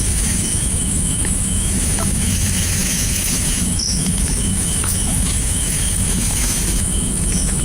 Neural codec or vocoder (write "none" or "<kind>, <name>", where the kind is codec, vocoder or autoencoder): autoencoder, DAC-VAE